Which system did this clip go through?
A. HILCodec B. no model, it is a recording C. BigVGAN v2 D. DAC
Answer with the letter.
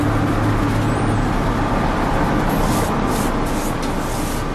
B